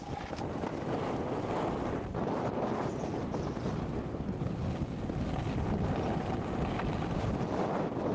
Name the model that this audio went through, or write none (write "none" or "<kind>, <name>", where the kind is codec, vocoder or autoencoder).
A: none